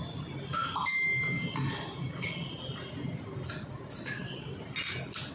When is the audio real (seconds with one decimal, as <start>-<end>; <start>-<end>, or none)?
0.0-5.3